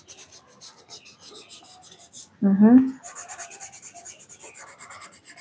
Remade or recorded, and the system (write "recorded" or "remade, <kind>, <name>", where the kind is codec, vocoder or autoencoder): recorded